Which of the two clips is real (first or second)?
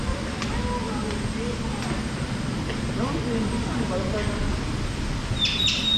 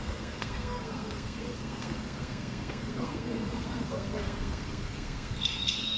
first